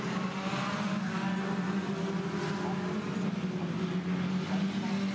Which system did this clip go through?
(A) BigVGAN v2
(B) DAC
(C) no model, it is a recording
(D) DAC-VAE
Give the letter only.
C